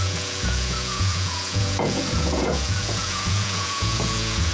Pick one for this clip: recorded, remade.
remade